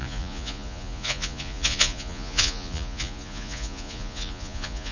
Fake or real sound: fake